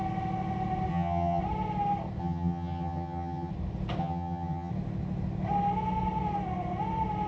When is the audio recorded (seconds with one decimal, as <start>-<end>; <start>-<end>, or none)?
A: 0.0-0.9; 1.4-2.2; 3.5-4.0; 4.7-7.3